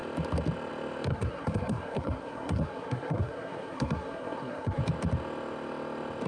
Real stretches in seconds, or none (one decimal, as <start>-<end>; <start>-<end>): 0.0-1.1; 4.8-6.3